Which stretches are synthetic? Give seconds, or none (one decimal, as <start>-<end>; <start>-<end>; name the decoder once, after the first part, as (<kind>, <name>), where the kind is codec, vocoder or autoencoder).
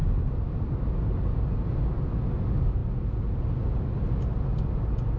none